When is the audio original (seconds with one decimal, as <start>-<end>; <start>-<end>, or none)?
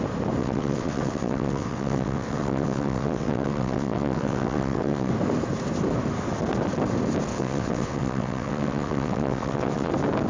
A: 0.0-0.4; 5.1-7.3; 9.9-10.3